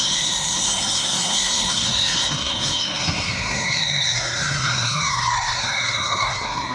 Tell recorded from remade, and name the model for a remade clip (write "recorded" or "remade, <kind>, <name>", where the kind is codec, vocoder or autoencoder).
remade, codec, SNAC